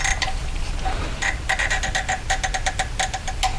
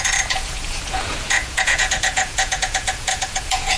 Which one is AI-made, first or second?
second